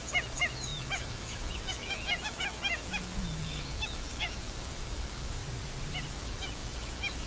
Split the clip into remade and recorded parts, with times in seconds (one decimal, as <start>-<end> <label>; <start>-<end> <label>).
0.0-5.4 remade; 5.4-6.1 recorded; 6.1-7.3 remade